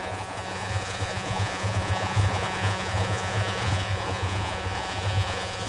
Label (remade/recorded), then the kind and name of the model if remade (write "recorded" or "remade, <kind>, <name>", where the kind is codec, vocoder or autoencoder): remade, vocoder, Vocos